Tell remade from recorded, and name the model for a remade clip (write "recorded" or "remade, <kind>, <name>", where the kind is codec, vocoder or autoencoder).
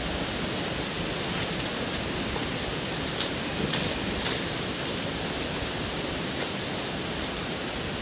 recorded